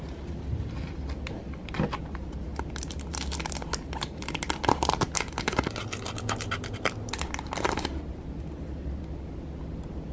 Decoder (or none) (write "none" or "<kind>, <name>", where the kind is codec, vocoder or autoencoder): none